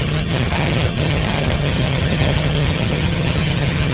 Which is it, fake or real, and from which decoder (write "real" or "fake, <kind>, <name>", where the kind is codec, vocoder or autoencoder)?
fake, vocoder, HiFi-GAN